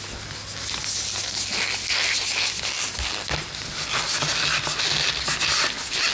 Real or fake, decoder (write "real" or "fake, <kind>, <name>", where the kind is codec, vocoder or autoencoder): real